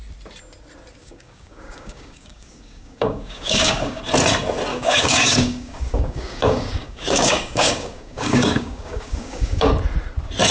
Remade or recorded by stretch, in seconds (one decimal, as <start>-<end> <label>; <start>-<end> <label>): 0.0-1.0 recorded; 1.0-4.0 remade; 4.0-4.7 recorded; 4.7-9.7 remade; 9.7-10.5 recorded